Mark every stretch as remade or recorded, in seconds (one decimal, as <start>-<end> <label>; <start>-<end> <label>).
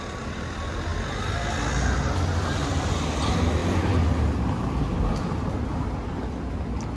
0.0-7.0 recorded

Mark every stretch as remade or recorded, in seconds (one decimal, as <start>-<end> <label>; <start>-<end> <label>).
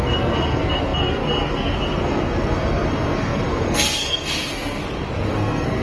0.0-4.8 remade; 4.8-5.3 recorded; 5.3-5.8 remade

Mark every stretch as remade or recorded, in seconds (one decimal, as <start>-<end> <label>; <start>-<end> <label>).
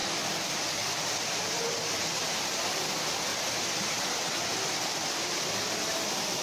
0.0-2.8 remade; 2.8-3.3 recorded; 3.3-6.4 remade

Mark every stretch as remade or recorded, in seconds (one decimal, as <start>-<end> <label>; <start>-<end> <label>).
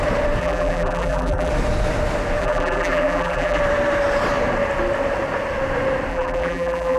0.0-0.4 recorded; 0.4-1.5 remade; 1.5-2.4 recorded; 2.4-3.6 remade; 3.6-6.1 recorded; 6.1-7.0 remade